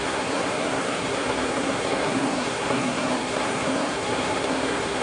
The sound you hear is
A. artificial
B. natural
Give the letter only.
A